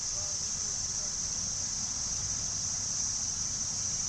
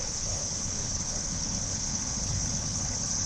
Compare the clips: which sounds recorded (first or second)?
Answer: first